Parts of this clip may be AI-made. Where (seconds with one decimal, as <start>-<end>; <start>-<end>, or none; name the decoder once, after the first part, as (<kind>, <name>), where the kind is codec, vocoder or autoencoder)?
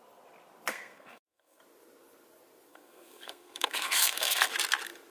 0.7-1.6 (codec, SNAC); 2.7-4.5